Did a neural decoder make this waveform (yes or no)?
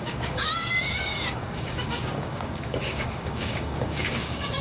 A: yes